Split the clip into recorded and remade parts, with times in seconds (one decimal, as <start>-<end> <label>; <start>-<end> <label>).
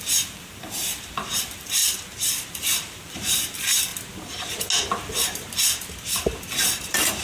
0.0-1.8 remade; 1.8-2.4 recorded; 2.4-3.9 remade; 3.9-6.8 recorded; 6.8-7.2 remade